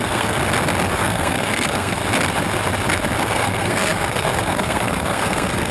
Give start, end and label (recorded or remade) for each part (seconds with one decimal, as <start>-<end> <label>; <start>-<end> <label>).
0.0-0.4 remade; 0.4-0.9 recorded; 0.9-2.0 remade; 2.0-3.2 recorded; 3.2-5.7 remade